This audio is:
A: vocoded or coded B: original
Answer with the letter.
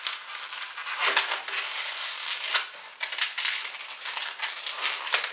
B